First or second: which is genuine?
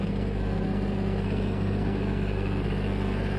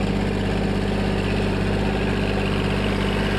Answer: second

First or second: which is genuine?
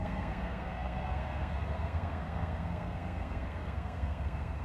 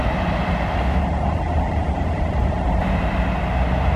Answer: second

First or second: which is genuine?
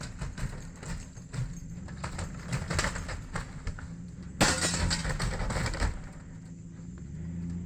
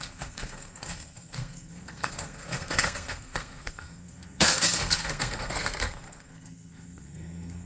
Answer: first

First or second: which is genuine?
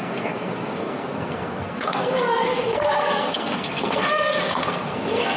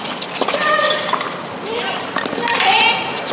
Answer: second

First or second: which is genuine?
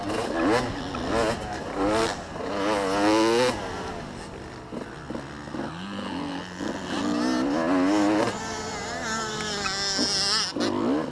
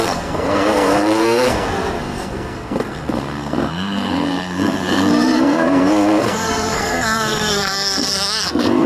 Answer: first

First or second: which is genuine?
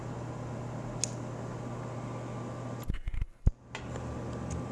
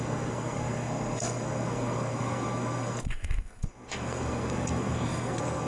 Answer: first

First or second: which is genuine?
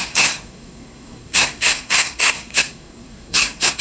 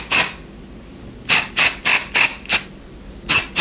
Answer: second